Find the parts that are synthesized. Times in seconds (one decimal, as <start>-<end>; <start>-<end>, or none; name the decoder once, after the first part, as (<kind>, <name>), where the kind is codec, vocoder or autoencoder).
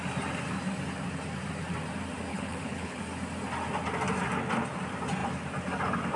2.3-3.0 (codec, HILCodec)